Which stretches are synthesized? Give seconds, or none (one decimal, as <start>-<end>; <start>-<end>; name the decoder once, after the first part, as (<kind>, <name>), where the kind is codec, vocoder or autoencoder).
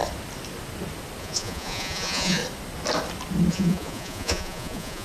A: 1.2-2.4 (vocoder, Vocos); 3.5-5.0